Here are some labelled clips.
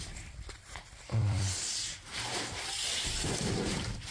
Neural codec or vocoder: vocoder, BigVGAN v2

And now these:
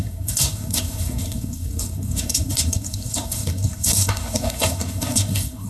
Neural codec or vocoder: codec, SNAC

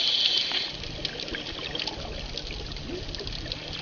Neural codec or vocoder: none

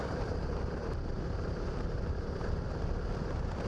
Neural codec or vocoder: vocoder, BigVGAN v2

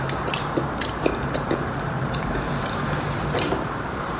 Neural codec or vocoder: vocoder, BigVGAN v2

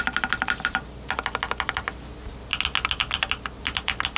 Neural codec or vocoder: none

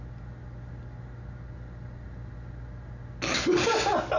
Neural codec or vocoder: none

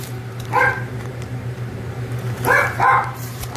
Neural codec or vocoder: vocoder, BigVGAN v2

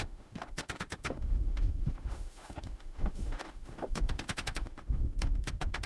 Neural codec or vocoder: autoencoder, DAC-VAE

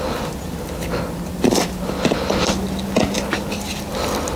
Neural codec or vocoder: none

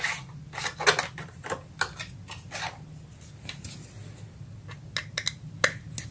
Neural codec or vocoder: none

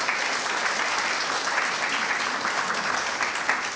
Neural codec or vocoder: none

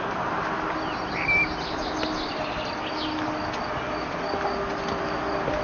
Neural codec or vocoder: none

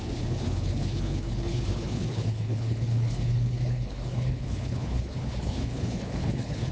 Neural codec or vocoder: codec, HILCodec